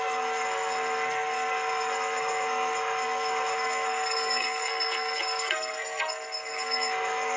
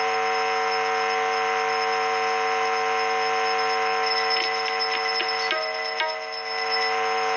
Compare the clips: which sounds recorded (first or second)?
second